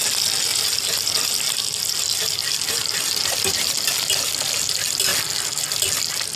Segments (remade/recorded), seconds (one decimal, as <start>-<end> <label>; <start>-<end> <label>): 0.0-0.5 recorded; 0.5-3.9 remade; 3.9-6.4 recorded